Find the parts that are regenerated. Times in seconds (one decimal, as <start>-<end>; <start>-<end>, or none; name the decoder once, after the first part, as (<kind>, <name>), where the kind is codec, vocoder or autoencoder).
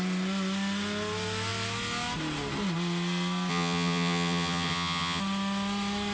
3.5-5.2 (vocoder, HiFi-GAN)